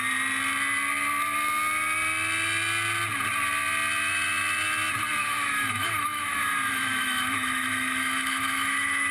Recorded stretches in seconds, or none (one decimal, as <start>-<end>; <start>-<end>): 0.0-5.2